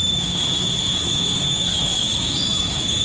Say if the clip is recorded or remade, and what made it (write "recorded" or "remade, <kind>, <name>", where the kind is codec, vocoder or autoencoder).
remade, autoencoder, DAC-VAE